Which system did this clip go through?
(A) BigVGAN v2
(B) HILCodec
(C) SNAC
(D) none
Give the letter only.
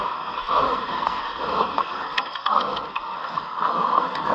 C